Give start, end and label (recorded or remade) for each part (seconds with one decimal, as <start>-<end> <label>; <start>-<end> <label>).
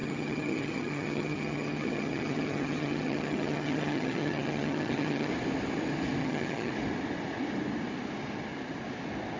0.0-5.3 remade; 5.3-6.2 recorded; 6.2-6.7 remade; 6.7-9.4 recorded